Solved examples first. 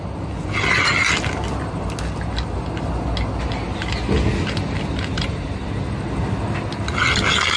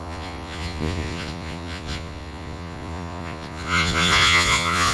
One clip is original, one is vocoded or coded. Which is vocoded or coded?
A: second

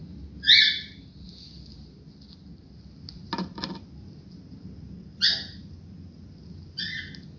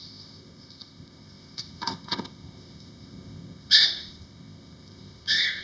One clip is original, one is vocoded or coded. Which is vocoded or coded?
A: second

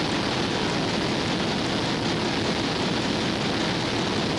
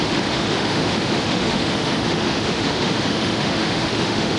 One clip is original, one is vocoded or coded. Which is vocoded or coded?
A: second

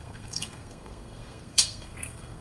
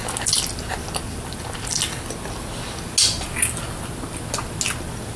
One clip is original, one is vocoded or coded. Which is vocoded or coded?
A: first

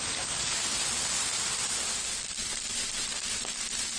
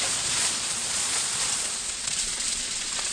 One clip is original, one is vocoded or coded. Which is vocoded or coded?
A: second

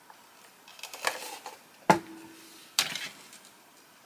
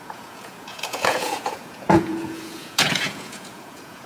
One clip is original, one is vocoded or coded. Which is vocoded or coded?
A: second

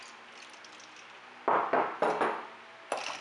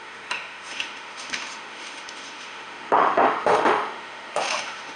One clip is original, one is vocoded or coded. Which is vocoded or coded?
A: second